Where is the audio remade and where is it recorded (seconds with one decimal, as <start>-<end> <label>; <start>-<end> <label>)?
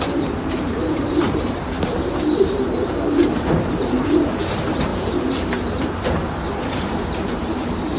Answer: 0.0-8.0 remade